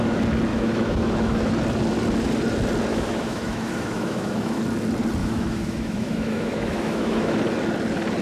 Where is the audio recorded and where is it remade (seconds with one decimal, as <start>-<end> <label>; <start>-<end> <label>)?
0.0-0.5 recorded; 0.5-1.5 remade; 1.5-2.9 recorded; 2.9-4.6 remade; 4.6-5.2 recorded; 5.2-7.4 remade; 7.4-8.2 recorded